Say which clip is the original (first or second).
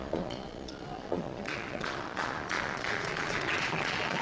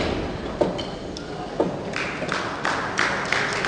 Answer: second